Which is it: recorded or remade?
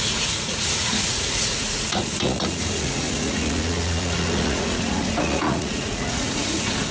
remade